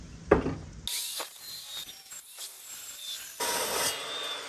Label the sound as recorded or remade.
recorded